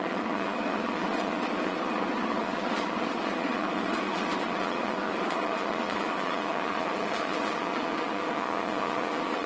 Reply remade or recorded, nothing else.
remade